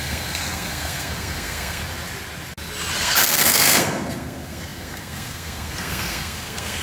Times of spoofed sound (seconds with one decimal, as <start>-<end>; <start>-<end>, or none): 0.0-1.8; 3.0-6.8